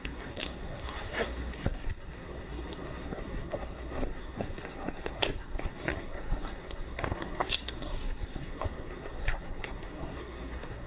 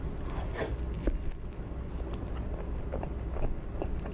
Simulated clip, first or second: first